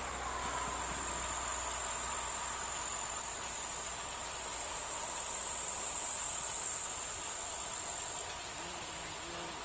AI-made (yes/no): no